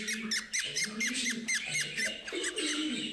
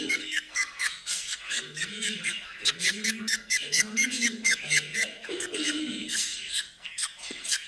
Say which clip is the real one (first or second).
first